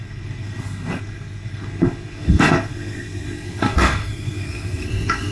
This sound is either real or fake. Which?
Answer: fake